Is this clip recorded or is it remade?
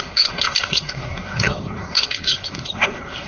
remade